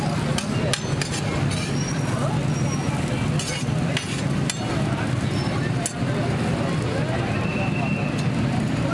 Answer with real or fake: real